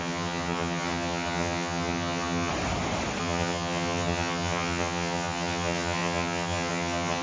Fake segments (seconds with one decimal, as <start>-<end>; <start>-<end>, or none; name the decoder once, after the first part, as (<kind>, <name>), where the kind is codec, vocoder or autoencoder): 0.0-2.5 (vocoder, HiFi-GAN); 3.2-7.2